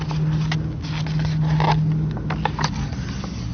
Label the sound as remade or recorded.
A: recorded